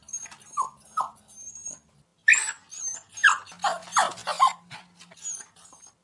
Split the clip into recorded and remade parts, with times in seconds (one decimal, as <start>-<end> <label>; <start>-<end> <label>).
0.0-6.0 recorded